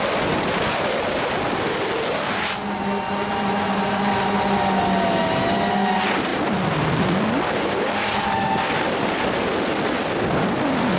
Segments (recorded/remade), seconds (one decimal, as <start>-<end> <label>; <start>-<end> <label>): 0.0-11.0 recorded